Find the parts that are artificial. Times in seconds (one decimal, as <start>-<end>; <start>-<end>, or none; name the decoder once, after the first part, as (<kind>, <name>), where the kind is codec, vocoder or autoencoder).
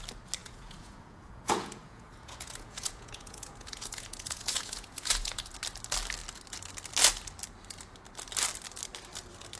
0.4-5.5 (vocoder, Vocos)